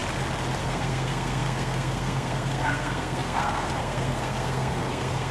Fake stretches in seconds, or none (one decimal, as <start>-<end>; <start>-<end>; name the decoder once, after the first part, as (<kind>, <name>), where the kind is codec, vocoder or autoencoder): 0.6-5.3 (codec, SNAC)